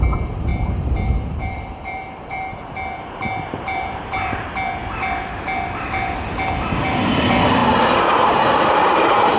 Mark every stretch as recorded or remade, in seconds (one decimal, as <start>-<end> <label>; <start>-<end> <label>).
0.0-0.5 recorded; 0.5-4.5 remade; 4.5-7.6 recorded; 7.6-9.4 remade